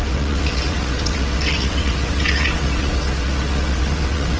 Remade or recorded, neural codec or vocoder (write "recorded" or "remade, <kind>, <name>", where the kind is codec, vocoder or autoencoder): remade, vocoder, WaveNeXt